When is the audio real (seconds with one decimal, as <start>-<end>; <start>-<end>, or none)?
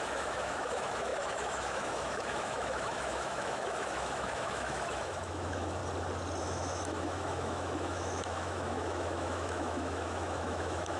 5.8-6.4